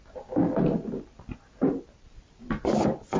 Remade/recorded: recorded